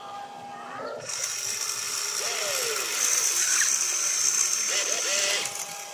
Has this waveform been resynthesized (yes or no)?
no